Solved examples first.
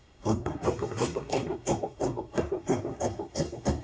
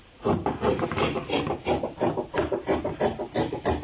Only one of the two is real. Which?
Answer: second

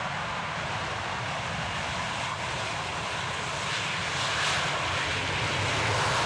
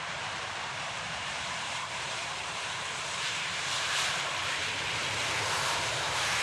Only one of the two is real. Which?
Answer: first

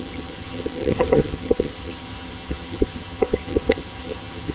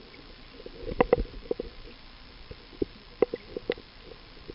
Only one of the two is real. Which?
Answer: second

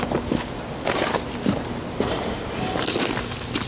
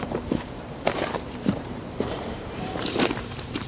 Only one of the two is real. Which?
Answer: first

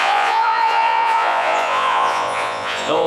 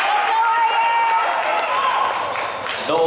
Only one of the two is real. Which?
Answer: second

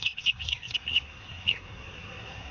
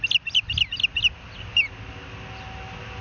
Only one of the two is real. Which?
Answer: second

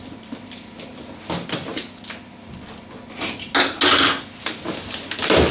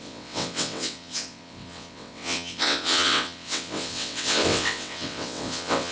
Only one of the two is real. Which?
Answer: first